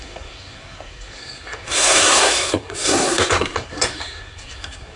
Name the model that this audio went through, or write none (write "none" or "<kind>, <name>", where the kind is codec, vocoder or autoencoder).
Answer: codec, SNAC